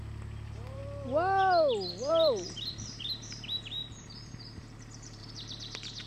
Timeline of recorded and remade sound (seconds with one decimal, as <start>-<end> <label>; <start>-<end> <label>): 0.0-0.8 remade; 0.8-2.1 recorded; 2.1-6.1 remade